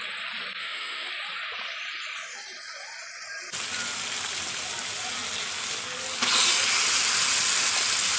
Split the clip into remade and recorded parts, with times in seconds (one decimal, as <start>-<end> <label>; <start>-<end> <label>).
0.0-0.6 recorded; 0.6-1.1 remade; 1.1-8.2 recorded